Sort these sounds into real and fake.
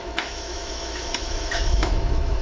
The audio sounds fake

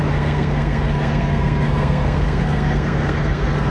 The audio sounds fake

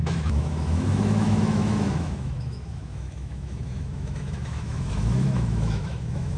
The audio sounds fake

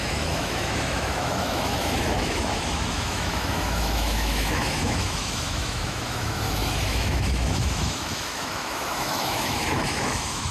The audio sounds fake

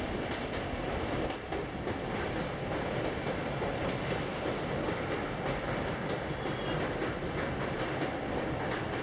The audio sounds real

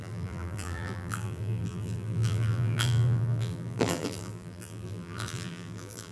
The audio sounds fake